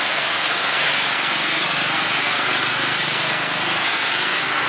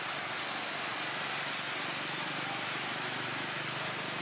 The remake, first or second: first